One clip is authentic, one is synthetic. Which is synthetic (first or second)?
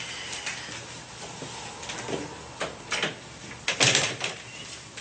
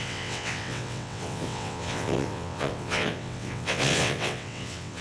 second